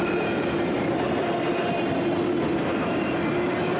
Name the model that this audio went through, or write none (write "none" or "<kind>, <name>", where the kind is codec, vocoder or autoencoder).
none